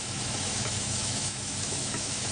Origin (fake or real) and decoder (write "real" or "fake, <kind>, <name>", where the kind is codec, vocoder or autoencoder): fake, autoencoder, DAC-VAE